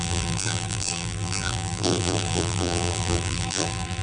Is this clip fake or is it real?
fake